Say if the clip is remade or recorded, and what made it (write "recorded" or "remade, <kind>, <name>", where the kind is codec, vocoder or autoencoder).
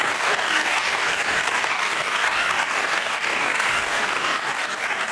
remade, codec, DAC